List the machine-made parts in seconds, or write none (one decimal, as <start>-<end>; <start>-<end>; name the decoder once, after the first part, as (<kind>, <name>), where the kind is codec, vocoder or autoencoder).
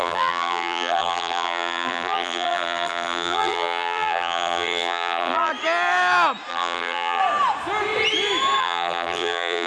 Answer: 0.0-5.5 (vocoder, BigVGAN v2); 6.5-7.2; 8.6-9.7